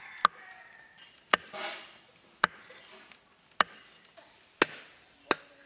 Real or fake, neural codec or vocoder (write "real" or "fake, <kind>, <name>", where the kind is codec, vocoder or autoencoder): real